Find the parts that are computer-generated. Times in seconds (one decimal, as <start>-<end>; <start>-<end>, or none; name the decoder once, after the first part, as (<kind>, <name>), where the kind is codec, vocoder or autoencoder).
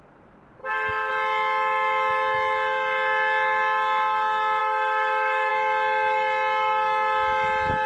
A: 0.6-1.1 (autoencoder, DAC-VAE); 4.6-5.5